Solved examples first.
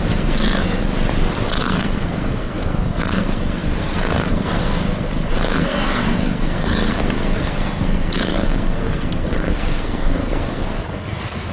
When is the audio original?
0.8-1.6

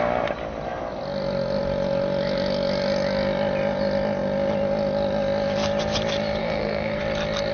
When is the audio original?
0.0-6.4; 7.0-7.5

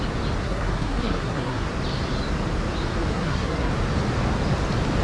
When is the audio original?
0.0-0.4; 1.7-3.1; 3.7-5.0